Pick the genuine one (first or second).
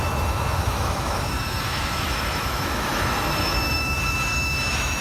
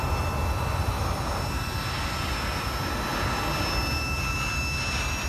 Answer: second